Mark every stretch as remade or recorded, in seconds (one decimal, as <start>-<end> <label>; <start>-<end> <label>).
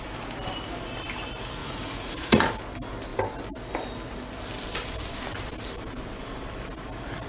0.0-1.6 recorded; 1.6-2.5 remade; 2.5-7.3 recorded